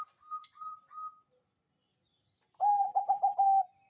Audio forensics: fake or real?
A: real